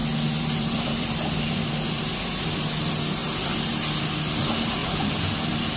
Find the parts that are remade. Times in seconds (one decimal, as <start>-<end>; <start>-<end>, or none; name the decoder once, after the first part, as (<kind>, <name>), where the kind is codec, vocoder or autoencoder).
0.0-2.5 (vocoder, BigVGAN v2); 4.8-5.8